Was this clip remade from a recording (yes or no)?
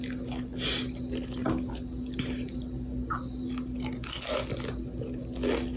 no